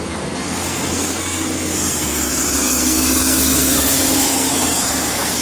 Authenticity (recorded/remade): remade